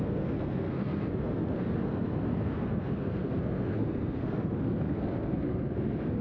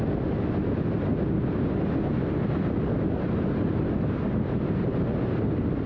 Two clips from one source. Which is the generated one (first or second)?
first